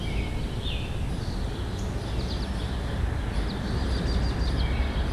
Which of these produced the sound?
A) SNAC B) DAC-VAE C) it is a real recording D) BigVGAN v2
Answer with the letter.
C